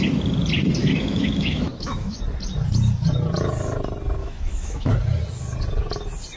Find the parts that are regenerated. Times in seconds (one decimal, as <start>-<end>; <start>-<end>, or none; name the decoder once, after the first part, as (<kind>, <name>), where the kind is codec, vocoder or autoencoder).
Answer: 0.8-2.2 (autoencoder, DAC-VAE); 4.2-4.9